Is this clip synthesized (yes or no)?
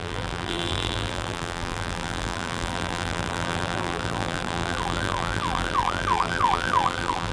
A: yes